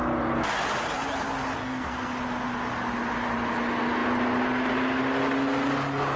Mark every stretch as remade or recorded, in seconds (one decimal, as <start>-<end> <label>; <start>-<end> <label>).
0.0-1.6 recorded; 1.6-2.1 remade; 2.1-6.2 recorded